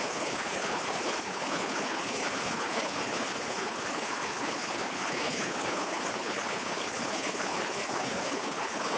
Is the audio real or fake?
fake